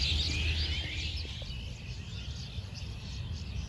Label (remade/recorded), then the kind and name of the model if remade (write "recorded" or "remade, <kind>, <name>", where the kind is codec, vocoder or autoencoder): recorded